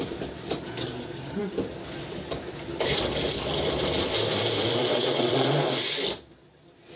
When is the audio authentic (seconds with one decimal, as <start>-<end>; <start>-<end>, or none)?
0.0-4.9; 5.5-7.0